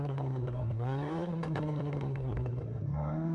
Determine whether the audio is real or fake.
fake